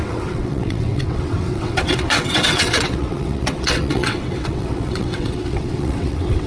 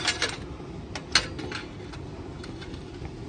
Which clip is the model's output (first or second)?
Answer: first